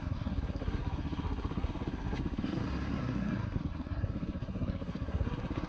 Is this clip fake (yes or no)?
yes